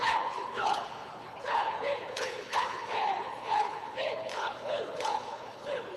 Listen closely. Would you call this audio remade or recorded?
remade